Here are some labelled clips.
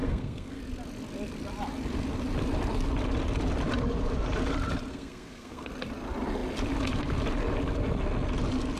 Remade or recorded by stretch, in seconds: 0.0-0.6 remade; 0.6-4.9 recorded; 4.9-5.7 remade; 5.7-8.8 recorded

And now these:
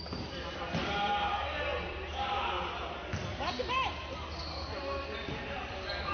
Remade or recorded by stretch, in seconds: 0.0-6.1 recorded